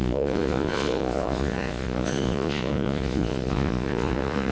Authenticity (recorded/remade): remade